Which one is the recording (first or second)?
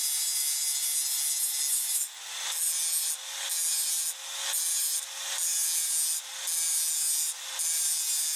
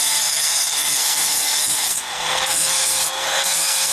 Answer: first